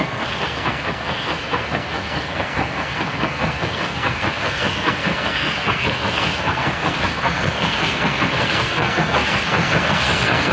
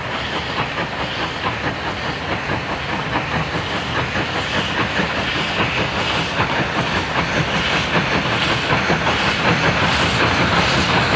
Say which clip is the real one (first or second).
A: second